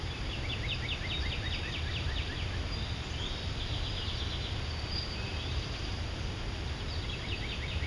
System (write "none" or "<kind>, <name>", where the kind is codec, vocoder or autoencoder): none